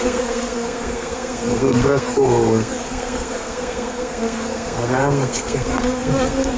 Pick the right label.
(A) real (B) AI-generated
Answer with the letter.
B